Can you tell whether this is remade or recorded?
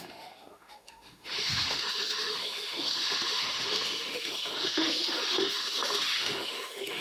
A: remade